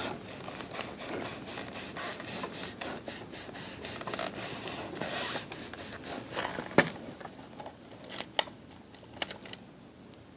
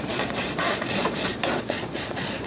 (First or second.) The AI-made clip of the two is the second